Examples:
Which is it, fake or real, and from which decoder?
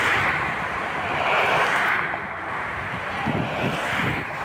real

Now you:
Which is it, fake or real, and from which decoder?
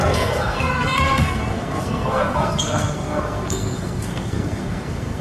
fake, codec, SNAC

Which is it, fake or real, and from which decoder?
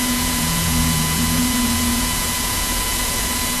fake, vocoder, Vocos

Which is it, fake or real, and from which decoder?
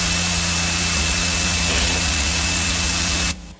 fake, vocoder, Vocos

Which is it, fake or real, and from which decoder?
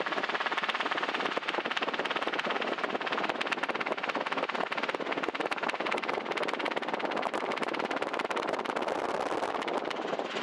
real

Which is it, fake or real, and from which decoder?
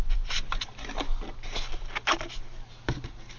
real